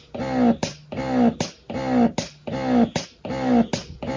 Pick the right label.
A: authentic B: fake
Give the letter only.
A